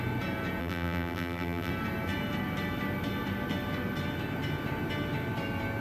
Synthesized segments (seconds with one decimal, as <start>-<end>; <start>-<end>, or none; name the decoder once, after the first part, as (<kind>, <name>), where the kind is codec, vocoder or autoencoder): 0.6-1.7 (vocoder, BigVGAN v2)